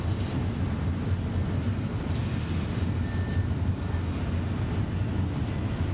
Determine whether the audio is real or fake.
real